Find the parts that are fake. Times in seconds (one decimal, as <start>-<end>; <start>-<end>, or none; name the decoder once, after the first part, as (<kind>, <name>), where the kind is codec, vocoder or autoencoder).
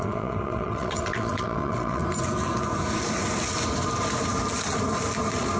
0.0-2.0 (vocoder, WaveNeXt)